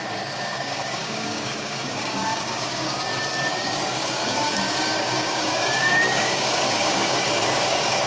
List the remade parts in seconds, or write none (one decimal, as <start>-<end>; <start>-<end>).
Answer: 0.0-3.1; 3.6-8.1